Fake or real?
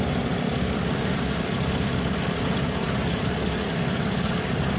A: real